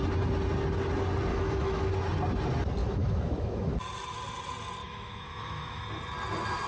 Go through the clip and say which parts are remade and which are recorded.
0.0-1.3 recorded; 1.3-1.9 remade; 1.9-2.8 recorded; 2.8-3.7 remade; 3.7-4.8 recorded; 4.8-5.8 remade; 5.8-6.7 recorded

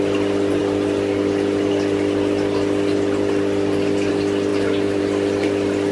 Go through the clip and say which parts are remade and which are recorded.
0.0-5.9 recorded

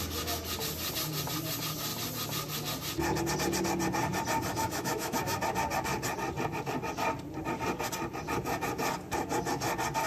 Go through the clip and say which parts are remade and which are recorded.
0.0-4.5 recorded; 4.5-5.4 remade; 5.4-10.1 recorded

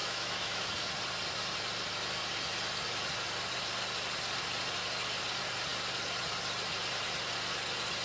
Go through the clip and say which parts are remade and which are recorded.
0.0-0.7 remade; 0.7-8.0 recorded

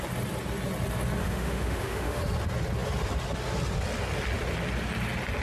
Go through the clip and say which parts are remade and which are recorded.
0.0-1.2 recorded; 1.2-2.2 remade; 2.2-5.4 recorded